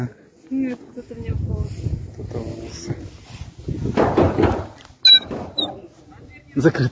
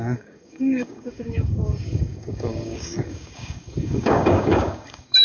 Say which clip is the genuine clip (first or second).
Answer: first